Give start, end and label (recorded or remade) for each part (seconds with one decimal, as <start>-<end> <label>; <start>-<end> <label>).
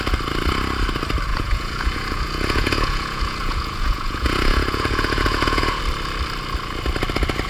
0.0-1.3 recorded; 1.3-5.8 remade; 5.8-7.5 recorded